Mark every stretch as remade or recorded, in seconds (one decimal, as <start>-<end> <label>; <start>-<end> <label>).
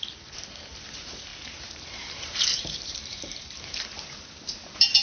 0.0-5.0 remade